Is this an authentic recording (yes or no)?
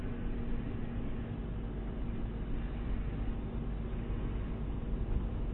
yes